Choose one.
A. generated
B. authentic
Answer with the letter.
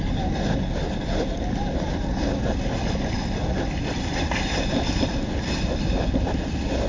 B